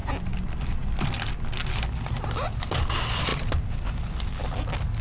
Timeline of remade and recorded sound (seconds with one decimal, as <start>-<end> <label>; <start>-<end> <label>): 0.0-1.6 recorded; 1.6-2.7 remade; 2.7-3.3 recorded; 3.3-4.3 remade; 4.3-5.0 recorded